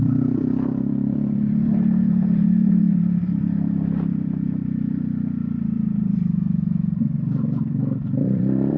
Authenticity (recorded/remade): remade